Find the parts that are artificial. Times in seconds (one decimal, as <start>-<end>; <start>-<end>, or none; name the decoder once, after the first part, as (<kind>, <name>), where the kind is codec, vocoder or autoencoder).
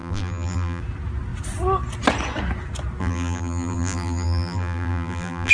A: 0.0-0.8 (vocoder, BigVGAN v2); 3.0-5.5